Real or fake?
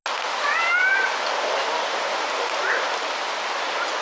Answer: real